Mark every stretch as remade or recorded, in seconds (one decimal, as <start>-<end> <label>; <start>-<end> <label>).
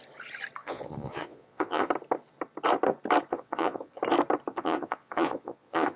0.0-0.6 recorded; 0.6-1.9 remade; 1.9-3.3 recorded; 3.3-4.0 remade; 4.0-4.5 recorded; 4.5-6.0 remade